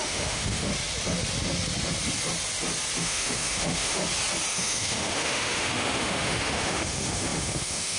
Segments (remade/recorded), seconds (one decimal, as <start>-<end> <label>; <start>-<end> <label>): 0.0-0.7 remade; 0.7-3.0 recorded; 3.0-4.0 remade; 4.0-4.5 recorded; 4.5-8.0 remade